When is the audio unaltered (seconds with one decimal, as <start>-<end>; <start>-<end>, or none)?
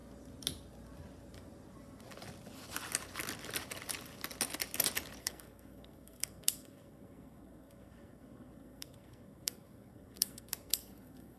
0.0-5.2